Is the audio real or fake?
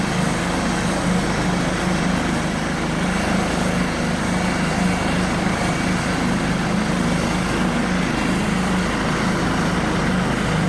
real